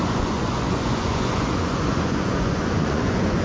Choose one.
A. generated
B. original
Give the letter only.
A